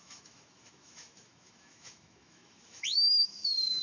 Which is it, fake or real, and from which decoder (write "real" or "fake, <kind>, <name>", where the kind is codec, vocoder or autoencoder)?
fake, autoencoder, DAC-VAE